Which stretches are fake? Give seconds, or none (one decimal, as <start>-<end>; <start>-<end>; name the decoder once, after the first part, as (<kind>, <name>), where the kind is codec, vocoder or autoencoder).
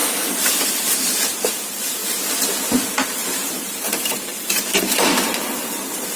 0.0-2.0 (vocoder, BigVGAN v2); 2.6-6.2